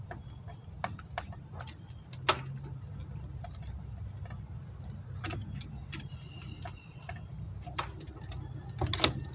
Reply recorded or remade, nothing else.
recorded